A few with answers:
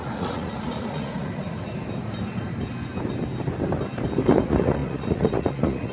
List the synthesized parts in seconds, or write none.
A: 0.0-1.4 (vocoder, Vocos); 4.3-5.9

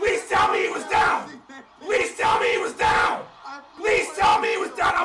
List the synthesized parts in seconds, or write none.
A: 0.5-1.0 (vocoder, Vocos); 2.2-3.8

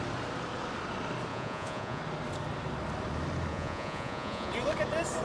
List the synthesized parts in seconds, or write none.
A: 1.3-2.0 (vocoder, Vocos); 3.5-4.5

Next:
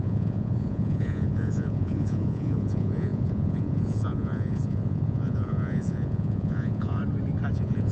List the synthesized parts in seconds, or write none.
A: 0.0-7.0 (vocoder, Vocos); 7.5-7.9

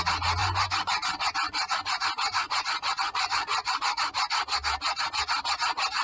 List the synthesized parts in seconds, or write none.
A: 0.4-4.0 (vocoder, Vocos)